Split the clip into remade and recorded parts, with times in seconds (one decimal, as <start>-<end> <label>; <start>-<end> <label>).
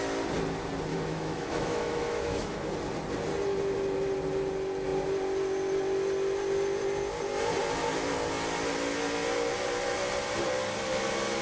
0.0-0.9 recorded; 0.9-2.7 remade; 2.7-11.4 recorded